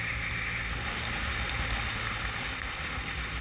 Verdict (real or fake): real